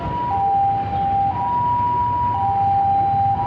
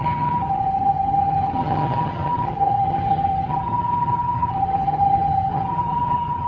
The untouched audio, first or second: first